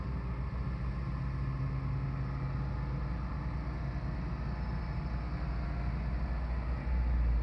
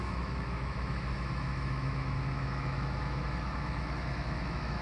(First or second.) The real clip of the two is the first